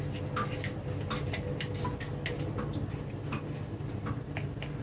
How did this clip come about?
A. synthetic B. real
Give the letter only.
B